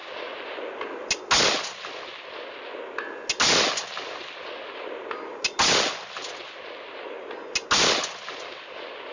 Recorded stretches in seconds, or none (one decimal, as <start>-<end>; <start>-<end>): 0.0-9.1